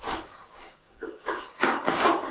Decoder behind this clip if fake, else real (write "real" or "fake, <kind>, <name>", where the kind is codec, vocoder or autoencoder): fake, codec, DAC